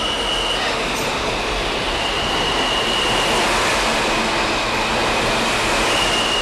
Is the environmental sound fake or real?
real